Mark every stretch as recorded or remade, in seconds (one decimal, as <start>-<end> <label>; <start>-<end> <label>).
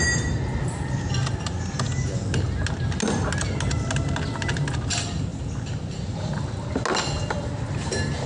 0.0-8.3 recorded